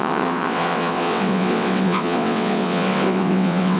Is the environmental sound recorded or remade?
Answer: remade